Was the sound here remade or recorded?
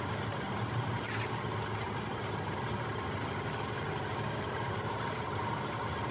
remade